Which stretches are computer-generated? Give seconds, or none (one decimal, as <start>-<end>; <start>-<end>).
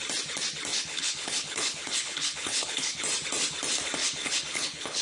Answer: 0.7-3.0; 4.0-5.0